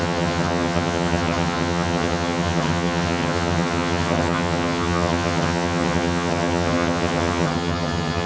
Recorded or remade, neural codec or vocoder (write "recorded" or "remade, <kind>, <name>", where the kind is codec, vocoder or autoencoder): remade, vocoder, HiFi-GAN